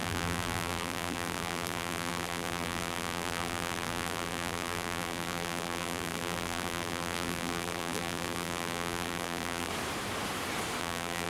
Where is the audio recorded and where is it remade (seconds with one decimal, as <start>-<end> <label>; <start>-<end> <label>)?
0.0-9.7 remade; 9.7-10.8 recorded; 10.8-11.3 remade